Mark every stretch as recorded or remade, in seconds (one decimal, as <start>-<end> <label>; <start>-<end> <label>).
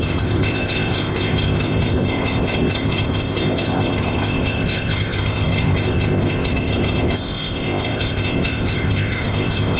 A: 0.0-9.8 remade